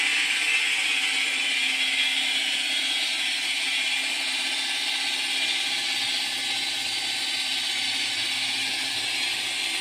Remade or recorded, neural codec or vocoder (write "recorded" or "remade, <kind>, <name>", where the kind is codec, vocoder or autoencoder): recorded